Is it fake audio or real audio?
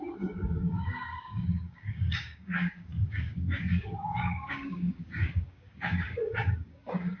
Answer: fake